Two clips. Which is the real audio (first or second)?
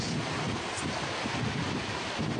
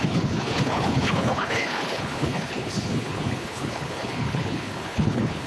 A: first